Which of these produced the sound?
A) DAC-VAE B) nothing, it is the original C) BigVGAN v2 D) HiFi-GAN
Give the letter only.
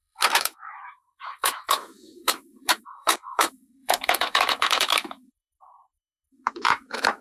A